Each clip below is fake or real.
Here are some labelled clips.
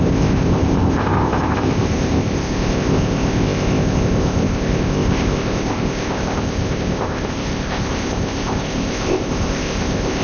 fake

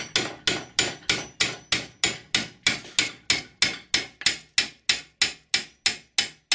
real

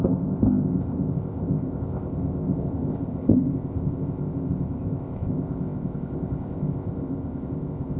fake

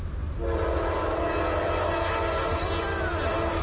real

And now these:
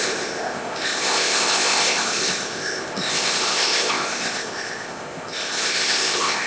fake